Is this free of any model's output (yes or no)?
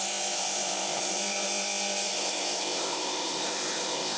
no